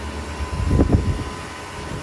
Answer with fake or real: real